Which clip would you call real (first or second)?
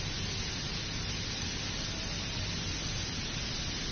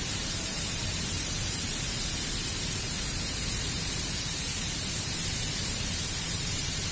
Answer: first